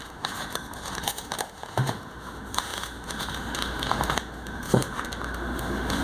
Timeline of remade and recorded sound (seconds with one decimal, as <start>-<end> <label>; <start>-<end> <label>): 0.0-6.0 remade